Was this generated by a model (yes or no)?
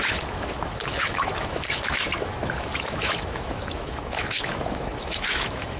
yes